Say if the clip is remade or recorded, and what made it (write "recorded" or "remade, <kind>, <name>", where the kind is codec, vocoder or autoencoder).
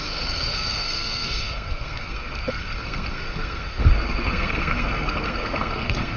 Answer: remade, codec, SNAC